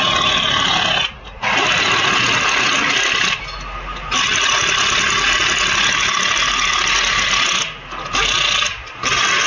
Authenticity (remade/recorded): recorded